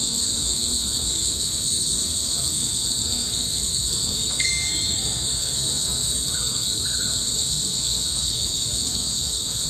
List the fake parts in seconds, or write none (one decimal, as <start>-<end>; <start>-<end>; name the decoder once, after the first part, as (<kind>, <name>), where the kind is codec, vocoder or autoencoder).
0.0-9.7 (codec, SNAC)